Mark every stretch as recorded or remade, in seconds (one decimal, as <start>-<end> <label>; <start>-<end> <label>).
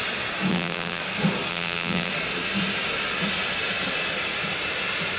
0.0-0.5 recorded; 0.5-1.0 remade; 1.0-1.5 recorded; 1.5-2.1 remade; 2.1-5.2 recorded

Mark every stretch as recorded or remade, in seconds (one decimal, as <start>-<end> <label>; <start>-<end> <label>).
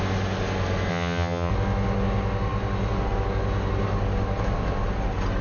0.0-0.9 recorded; 0.9-1.5 remade; 1.5-5.4 recorded